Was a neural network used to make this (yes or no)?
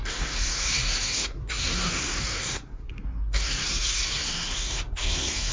yes